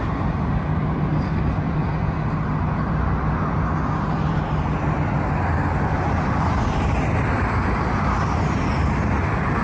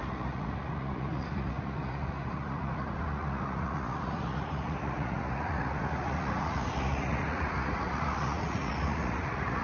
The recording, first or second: first